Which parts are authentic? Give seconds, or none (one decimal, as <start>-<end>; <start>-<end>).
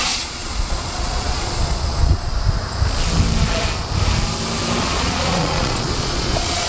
2.3-4.8